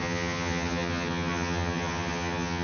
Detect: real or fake fake